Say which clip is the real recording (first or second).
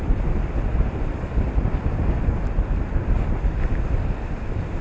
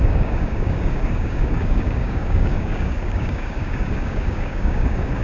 first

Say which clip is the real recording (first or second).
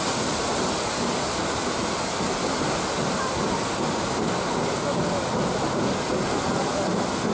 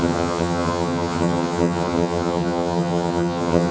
first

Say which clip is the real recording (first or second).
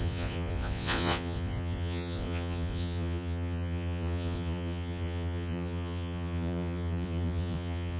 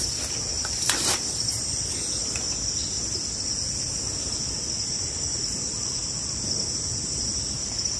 second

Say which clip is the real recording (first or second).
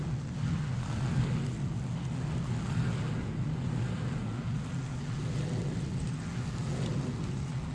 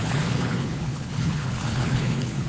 first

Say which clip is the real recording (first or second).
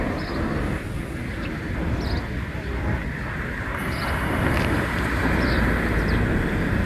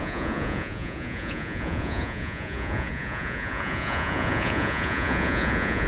first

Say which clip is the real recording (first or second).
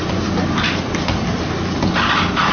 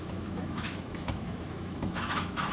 first